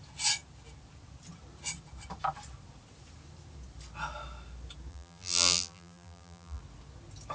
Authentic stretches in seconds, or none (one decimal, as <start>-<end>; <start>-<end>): 0.0-4.9; 6.6-7.3